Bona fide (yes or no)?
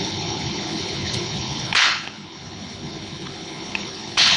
no